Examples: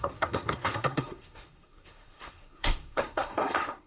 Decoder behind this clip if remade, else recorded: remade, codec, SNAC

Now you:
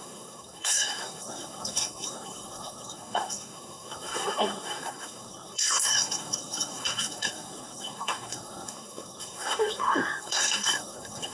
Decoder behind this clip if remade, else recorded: remade, codec, SNAC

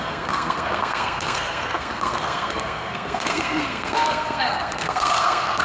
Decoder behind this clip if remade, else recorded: remade, codec, SNAC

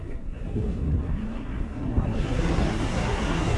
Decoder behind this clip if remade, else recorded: remade, codec, SNAC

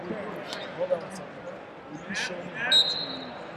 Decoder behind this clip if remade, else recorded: recorded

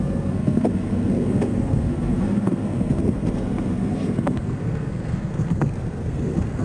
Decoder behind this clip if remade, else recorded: remade, codec, SNAC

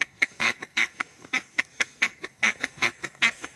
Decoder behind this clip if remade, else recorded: remade, codec, SNAC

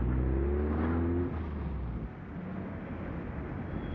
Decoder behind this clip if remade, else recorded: recorded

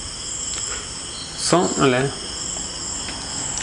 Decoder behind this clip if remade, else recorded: recorded